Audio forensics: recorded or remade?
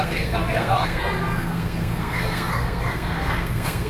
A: remade